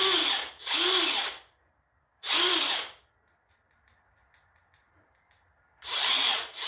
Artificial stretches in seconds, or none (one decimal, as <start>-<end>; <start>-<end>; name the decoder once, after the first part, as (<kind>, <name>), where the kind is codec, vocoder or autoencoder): none